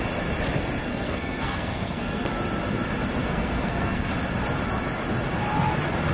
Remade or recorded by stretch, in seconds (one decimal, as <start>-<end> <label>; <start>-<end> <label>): 0.0-0.8 recorded; 0.8-2.3 remade; 2.3-3.2 recorded; 3.2-4.1 remade; 4.1-6.1 recorded